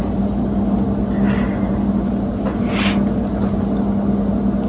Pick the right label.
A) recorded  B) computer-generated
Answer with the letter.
A